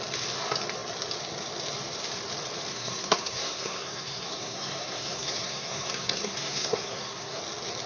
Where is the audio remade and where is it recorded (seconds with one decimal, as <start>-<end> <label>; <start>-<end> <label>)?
0.0-2.7 recorded; 2.7-7.4 remade; 7.4-7.9 recorded